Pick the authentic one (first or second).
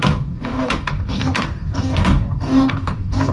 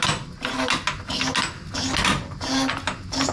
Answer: second